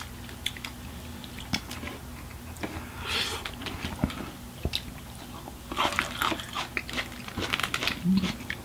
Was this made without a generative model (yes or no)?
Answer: yes